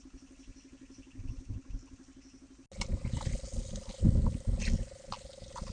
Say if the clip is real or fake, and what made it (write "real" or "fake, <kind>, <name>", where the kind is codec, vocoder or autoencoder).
real